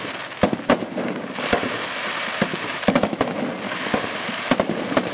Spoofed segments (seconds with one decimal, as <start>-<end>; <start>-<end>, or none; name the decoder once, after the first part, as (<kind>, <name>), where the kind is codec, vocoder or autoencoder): 2.5-3.4 (autoencoder, DAC-VAE)